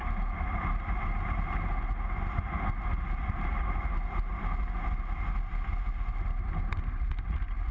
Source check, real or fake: real